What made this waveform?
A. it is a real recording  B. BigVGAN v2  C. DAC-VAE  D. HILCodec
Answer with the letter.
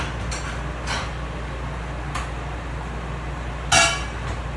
A